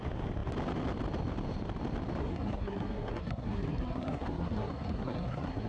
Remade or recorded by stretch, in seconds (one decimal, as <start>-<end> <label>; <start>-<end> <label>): 0.0-2.2 recorded; 2.2-5.7 remade